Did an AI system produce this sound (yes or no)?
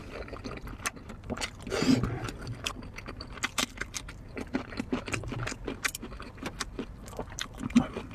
no